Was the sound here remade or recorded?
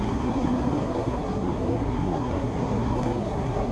remade